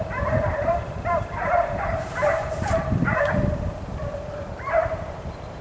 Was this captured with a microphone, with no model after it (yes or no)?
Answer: no